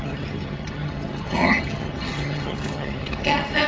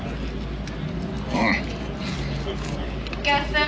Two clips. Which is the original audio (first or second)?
second